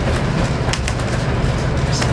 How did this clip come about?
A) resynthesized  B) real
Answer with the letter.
B